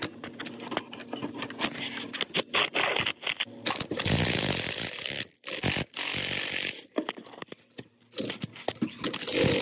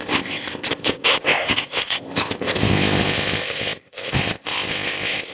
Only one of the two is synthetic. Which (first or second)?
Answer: second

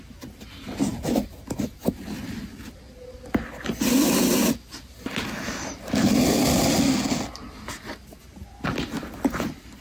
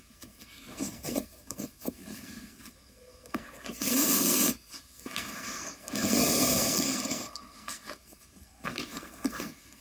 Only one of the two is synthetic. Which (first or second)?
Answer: second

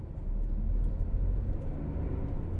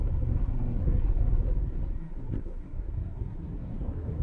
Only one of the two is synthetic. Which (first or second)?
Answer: second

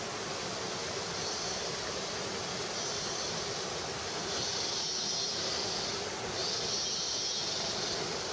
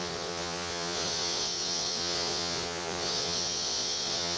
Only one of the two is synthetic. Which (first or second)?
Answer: second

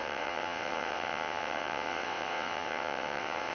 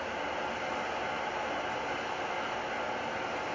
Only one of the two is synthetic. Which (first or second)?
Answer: first